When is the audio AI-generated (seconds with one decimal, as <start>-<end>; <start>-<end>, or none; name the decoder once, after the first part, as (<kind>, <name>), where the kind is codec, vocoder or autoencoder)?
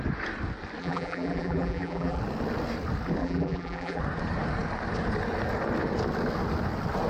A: 0.8-2.2 (vocoder, BigVGAN v2); 3.2-4.0